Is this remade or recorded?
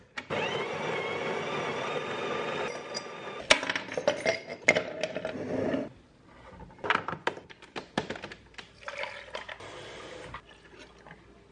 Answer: recorded